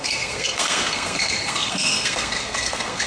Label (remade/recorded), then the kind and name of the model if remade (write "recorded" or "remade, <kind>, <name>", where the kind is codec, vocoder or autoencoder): remade, codec, SNAC